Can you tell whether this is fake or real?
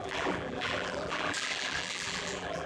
fake